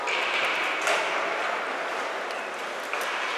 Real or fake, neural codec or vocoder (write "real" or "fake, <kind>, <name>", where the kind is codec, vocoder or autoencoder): real